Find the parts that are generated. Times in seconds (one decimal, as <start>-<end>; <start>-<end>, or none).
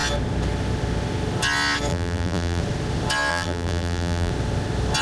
1.9-2.6; 3.3-4.3